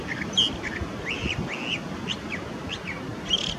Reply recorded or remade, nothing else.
recorded